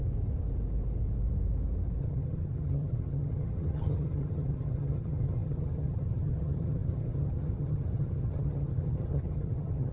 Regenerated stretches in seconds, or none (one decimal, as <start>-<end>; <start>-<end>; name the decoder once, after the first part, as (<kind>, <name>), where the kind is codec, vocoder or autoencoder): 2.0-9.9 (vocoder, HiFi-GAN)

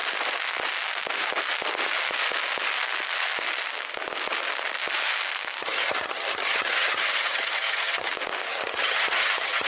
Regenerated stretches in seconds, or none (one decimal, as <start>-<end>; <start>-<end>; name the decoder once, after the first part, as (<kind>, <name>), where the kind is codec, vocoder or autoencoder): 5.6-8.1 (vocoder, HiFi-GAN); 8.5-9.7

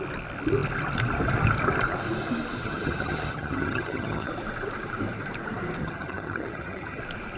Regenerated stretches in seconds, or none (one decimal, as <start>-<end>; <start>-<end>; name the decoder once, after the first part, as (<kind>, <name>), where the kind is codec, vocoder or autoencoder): 2.6-4.3 (vocoder, HiFi-GAN); 5.8-7.0

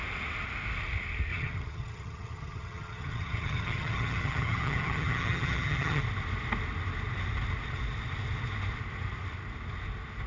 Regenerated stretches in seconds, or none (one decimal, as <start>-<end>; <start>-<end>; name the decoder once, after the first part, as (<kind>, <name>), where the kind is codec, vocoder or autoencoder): 1.3-6.0 (vocoder, HiFi-GAN)

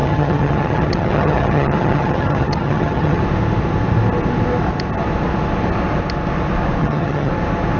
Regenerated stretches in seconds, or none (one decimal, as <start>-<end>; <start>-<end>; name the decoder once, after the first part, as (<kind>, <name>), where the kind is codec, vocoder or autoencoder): 0.0-3.2 (vocoder, HiFi-GAN); 6.8-7.3

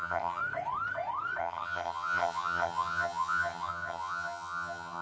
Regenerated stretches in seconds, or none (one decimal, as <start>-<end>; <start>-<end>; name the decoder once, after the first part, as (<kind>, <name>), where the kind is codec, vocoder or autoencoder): 0.0-0.4 (vocoder, HiFi-GAN); 1.4-5.0